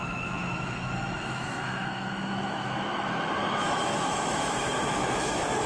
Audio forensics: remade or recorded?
remade